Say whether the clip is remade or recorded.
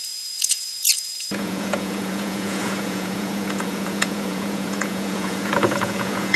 remade